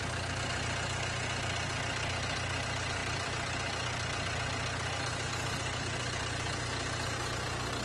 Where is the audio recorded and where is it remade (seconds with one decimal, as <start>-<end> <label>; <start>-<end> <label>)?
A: 0.0-7.8 recorded